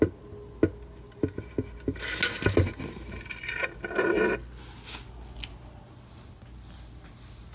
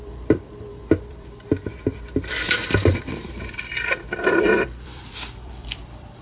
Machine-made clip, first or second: second